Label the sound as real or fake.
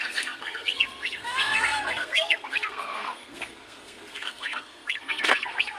fake